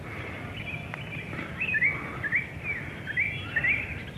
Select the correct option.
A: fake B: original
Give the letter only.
B